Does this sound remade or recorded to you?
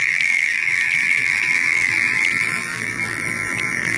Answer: remade